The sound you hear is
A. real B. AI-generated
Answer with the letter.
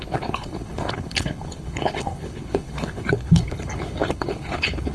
B